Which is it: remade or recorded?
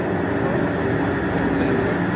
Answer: recorded